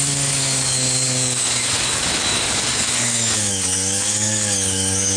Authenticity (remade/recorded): remade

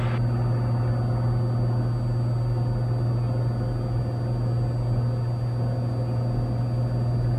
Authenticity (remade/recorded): recorded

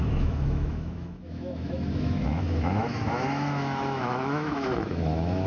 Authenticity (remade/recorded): remade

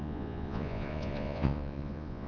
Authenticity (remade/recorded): remade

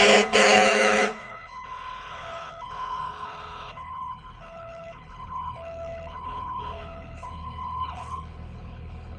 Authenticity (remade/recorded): remade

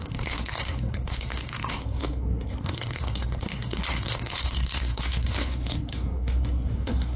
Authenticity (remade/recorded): remade